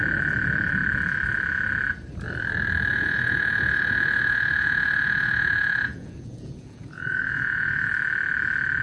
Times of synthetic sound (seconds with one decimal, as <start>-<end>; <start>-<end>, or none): 2.9-7.9